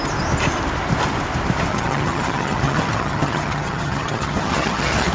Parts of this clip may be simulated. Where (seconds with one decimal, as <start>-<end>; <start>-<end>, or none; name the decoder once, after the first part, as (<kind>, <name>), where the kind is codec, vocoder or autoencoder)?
1.7-5.1 (vocoder, HiFi-GAN)